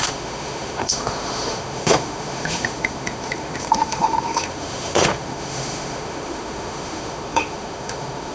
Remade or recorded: remade